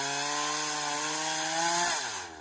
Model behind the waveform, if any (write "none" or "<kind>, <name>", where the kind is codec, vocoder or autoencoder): none